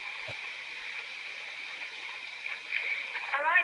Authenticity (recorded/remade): remade